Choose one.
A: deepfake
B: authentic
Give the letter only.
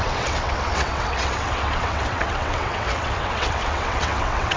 A